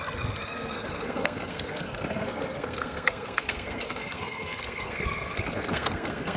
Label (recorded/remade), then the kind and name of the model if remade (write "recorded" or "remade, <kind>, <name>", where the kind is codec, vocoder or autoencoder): remade, codec, SNAC